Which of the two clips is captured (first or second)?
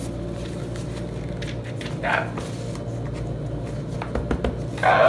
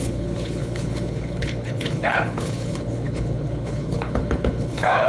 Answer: first